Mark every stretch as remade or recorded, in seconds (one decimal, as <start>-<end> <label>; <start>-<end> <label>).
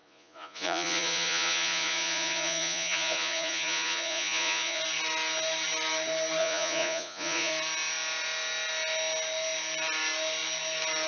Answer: 0.0-4.8 remade; 4.8-6.4 recorded; 6.4-7.5 remade; 7.5-11.1 recorded